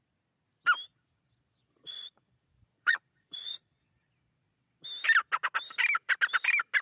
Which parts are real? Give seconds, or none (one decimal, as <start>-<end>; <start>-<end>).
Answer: 0.0-0.9; 4.8-6.8